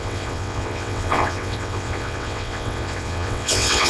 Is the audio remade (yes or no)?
yes